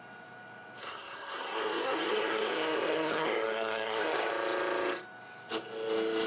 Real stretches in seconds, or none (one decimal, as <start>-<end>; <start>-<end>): 0.0-0.8; 4.3-6.3